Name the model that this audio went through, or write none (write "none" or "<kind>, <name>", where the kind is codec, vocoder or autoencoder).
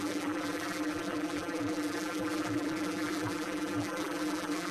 vocoder, BigVGAN v2